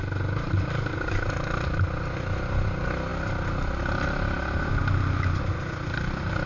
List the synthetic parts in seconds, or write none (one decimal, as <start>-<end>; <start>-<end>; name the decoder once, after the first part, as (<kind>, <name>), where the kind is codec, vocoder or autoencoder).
none